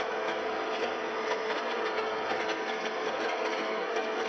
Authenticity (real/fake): fake